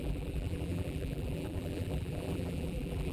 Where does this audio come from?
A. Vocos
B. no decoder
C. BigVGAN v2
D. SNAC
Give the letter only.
C